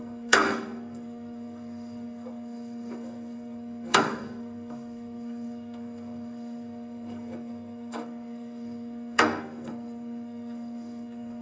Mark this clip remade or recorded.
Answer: remade